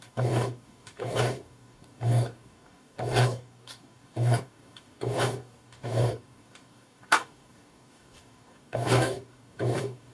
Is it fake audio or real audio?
fake